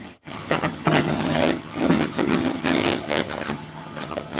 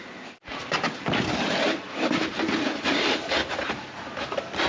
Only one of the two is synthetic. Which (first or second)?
first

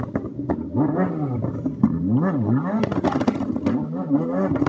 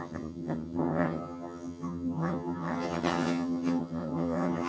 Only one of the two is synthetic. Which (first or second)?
second